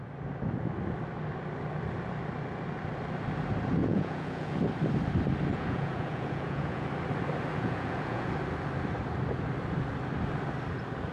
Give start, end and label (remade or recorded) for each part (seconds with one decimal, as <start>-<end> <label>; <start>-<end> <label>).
0.0-3.8 recorded; 3.8-4.5 remade; 4.5-5.5 recorded; 5.5-6.9 remade; 6.9-7.5 recorded; 7.5-8.3 remade; 8.3-11.1 recorded